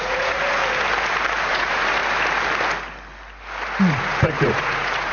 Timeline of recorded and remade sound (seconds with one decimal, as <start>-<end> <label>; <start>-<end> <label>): 0.0-0.6 remade; 0.6-1.5 recorded; 1.5-2.0 remade; 2.0-3.8 recorded; 3.8-5.1 remade